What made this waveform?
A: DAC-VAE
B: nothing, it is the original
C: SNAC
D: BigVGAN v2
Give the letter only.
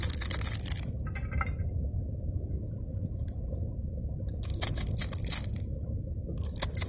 B